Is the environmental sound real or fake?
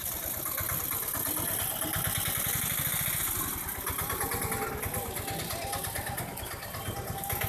real